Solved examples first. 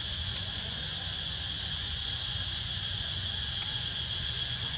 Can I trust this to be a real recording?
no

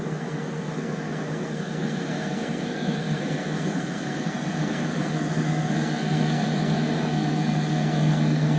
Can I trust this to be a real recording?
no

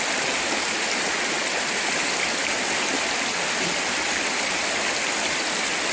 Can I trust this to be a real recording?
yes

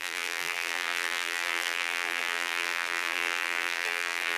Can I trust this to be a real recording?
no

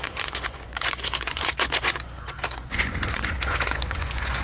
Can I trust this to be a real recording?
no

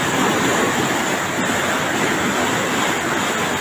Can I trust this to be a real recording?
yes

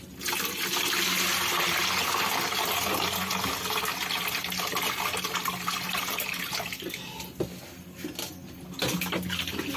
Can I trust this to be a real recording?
yes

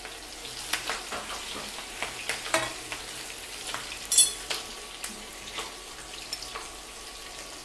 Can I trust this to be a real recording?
yes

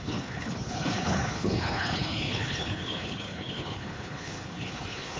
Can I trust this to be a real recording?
no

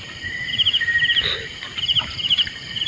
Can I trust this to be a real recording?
no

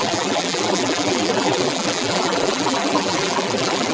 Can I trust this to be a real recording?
no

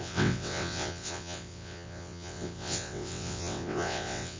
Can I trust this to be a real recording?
no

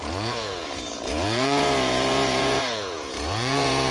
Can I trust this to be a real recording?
no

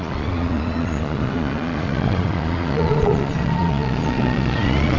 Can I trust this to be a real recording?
no